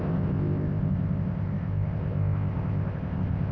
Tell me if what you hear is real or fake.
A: fake